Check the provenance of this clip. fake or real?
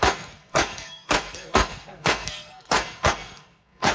fake